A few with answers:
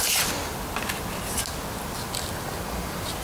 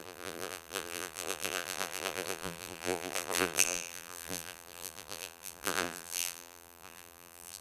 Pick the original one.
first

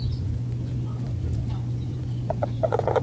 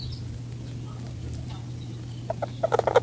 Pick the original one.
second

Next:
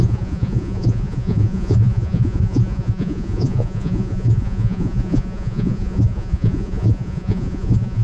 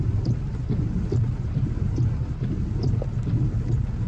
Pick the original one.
second